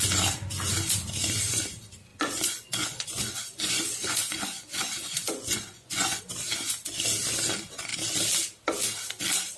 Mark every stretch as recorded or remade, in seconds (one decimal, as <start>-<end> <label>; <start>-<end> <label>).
0.0-2.1 recorded; 2.1-6.2 remade; 6.2-9.6 recorded